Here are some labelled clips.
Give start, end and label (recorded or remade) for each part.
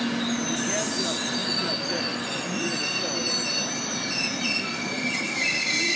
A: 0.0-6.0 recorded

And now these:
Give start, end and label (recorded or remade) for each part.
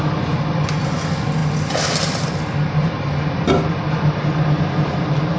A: 0.0-5.4 recorded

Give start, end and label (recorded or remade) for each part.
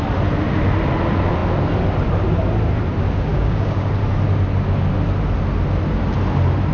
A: 0.0-3.3 recorded; 3.3-3.9 remade; 3.9-6.7 recorded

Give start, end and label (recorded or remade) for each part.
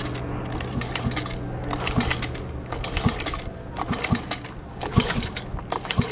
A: 0.0-4.7 recorded; 4.7-5.4 remade; 5.4-6.1 recorded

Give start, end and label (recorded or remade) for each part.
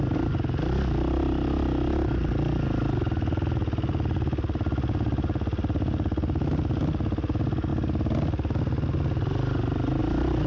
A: 0.0-10.5 recorded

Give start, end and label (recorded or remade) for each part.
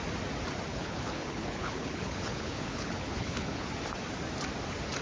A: 0.0-0.7 recorded; 0.7-3.7 remade; 3.7-5.0 recorded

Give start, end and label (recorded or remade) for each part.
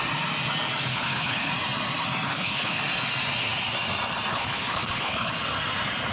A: 0.0-0.9 recorded; 0.9-1.5 remade; 1.5-2.3 recorded; 2.3-2.8 remade; 2.8-4.3 recorded; 4.3-5.3 remade; 5.3-6.1 recorded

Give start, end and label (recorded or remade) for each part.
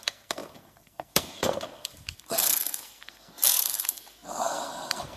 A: 0.0-5.2 remade